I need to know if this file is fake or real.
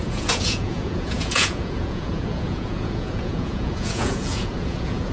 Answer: fake